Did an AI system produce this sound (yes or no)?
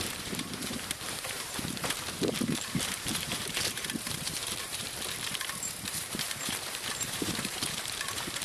yes